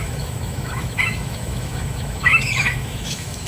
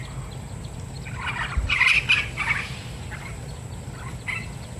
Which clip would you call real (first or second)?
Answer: second